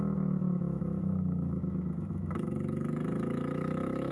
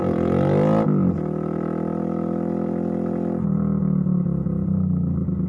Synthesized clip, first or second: first